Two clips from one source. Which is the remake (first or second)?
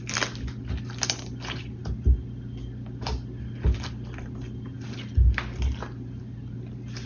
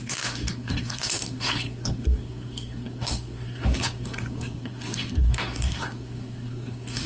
second